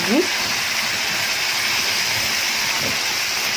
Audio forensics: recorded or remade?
recorded